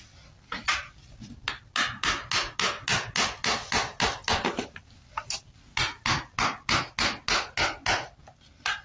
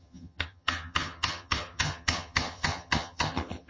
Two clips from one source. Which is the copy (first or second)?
second